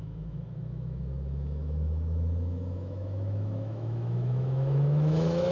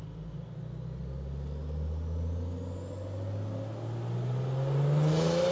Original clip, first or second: second